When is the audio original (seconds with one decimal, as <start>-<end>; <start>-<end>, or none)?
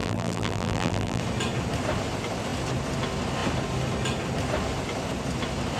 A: 1.2-5.8